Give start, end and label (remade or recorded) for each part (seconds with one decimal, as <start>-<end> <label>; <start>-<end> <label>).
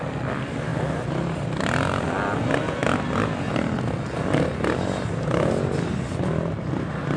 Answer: 0.0-7.2 recorded